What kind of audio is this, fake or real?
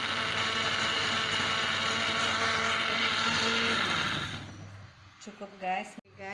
real